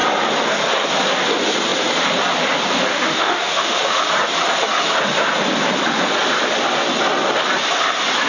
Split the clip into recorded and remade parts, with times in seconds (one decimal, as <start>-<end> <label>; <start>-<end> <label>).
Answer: 0.0-2.9 recorded; 2.9-4.0 remade; 4.0-8.3 recorded